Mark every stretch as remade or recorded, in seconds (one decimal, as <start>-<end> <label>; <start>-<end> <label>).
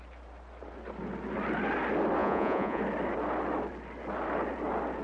0.0-2.2 recorded; 2.2-2.8 remade; 2.8-5.0 recorded